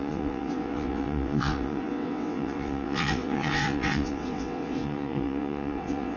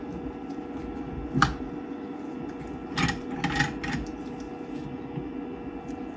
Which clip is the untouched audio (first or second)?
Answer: second